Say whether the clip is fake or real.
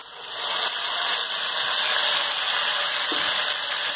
real